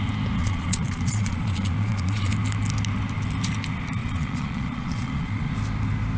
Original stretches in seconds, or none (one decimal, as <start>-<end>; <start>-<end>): 0.0-0.4; 2.3-4.0; 5.5-6.2